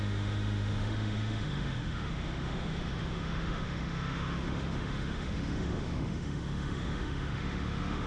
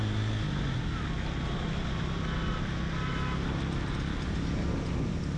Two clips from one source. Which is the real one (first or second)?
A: second